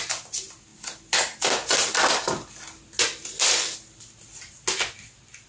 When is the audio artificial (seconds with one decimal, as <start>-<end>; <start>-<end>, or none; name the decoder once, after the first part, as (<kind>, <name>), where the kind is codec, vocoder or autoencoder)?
none